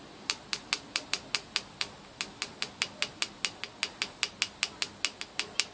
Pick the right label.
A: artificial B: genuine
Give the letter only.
B